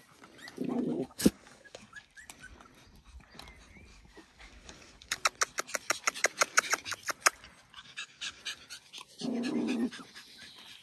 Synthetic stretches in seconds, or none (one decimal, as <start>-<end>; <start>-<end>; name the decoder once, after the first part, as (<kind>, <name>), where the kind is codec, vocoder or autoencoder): 0.9-2.1 (codec, DAC); 3.9-5.2; 7.8-8.4